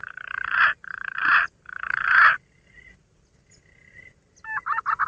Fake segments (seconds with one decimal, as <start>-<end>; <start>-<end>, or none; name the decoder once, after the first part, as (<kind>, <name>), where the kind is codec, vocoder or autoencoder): none